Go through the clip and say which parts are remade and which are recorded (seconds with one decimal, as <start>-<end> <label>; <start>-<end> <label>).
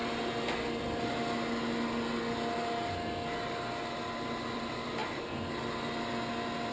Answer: 0.0-6.7 recorded